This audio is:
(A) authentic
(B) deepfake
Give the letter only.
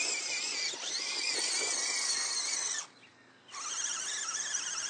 A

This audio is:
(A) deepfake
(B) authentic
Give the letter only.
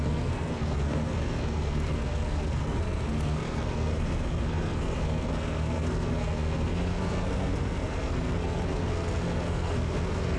A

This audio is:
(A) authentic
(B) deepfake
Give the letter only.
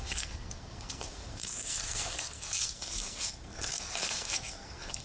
B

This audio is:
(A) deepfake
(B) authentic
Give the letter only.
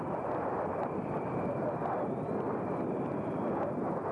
B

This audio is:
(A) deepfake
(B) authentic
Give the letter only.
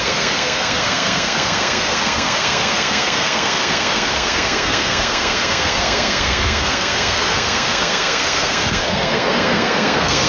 A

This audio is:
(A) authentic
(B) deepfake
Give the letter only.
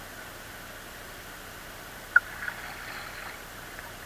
A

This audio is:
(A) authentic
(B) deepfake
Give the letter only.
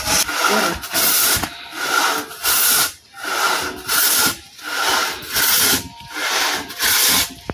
A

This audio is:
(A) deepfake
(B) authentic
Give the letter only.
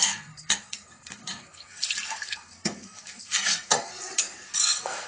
A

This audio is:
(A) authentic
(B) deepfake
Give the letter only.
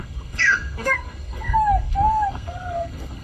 B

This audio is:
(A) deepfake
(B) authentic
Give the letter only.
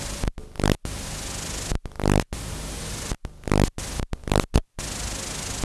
B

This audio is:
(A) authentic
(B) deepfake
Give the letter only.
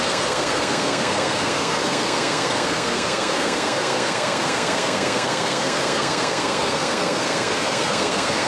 B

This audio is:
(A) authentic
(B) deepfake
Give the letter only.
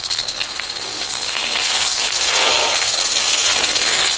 B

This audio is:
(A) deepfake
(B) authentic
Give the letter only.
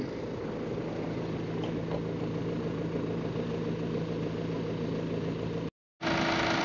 B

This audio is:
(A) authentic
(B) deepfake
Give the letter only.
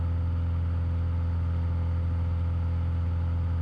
A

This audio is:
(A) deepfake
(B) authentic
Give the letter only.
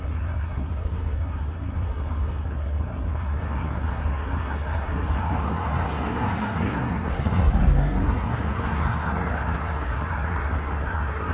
A